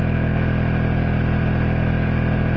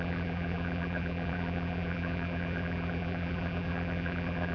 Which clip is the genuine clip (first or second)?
first